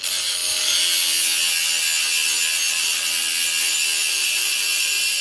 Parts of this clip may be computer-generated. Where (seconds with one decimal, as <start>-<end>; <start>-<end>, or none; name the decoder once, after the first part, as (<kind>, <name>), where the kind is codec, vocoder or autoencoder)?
4.1-5.2 (vocoder, BigVGAN v2)